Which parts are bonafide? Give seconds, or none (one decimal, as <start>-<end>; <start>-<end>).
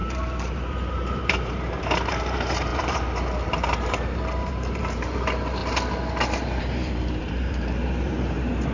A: 5.6-6.6